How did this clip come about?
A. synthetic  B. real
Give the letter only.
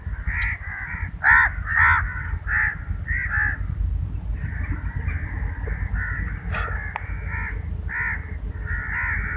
B